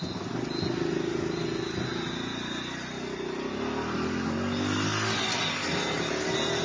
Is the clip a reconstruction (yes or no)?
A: no